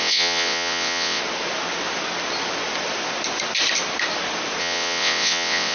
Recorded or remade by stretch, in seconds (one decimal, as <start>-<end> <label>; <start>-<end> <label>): 0.0-1.2 remade; 1.2-4.6 recorded; 4.6-5.7 remade